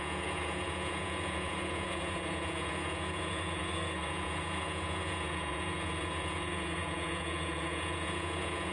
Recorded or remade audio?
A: remade